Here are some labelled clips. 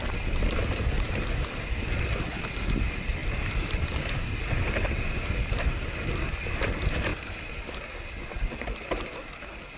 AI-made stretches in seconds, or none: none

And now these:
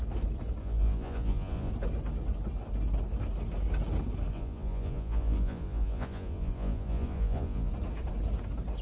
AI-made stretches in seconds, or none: 0.6-1.7 (vocoder, Vocos); 4.3-7.7

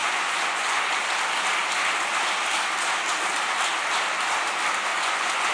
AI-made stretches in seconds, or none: 0.0-1.0 (vocoder, Vocos); 4.9-5.5

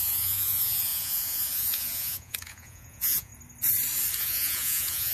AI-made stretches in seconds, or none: 0.0-3.3 (vocoder, Vocos); 4.2-5.1

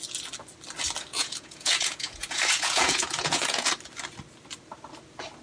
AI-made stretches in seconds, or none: 1.1-3.7 (vocoder, Vocos)